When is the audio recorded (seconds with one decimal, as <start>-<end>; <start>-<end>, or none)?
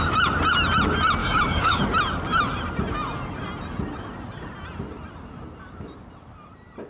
0.0-1.2; 1.8-6.9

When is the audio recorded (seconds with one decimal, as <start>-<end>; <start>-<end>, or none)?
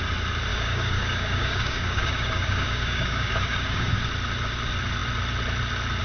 0.0-0.5; 4.0-6.0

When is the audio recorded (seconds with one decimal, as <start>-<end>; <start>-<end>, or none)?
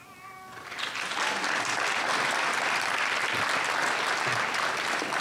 0.0-5.2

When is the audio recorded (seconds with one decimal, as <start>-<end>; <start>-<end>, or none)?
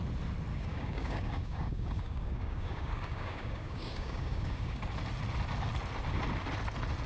0.0-0.5; 4.8-7.1